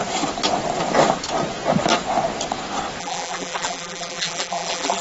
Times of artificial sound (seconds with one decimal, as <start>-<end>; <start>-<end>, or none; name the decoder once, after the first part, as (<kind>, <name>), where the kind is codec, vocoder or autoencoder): 3.0-5.0 (vocoder, BigVGAN v2)

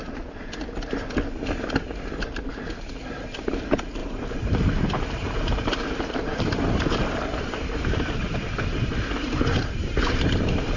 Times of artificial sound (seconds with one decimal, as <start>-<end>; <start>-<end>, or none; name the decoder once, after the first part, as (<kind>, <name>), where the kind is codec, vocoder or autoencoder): 4.0-5.7 (vocoder, BigVGAN v2); 6.3-10.8